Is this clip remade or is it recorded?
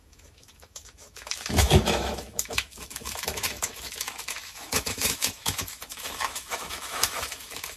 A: remade